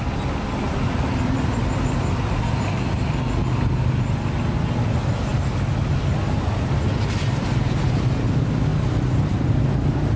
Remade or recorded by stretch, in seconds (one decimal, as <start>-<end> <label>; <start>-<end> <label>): 0.0-10.2 recorded